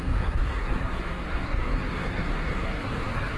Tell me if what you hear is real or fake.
fake